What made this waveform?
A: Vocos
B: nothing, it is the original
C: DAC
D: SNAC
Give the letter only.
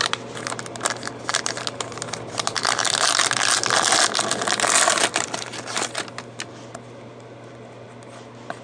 B